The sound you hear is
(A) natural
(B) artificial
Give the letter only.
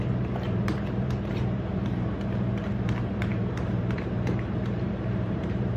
B